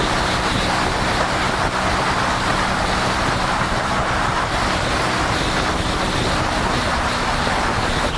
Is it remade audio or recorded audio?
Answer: recorded